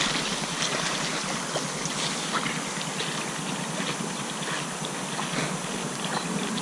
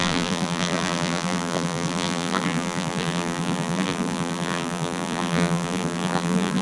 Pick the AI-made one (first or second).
second